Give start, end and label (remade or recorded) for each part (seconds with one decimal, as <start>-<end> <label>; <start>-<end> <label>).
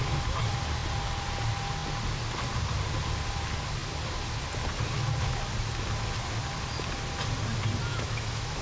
0.0-7.9 recorded; 7.9-8.6 remade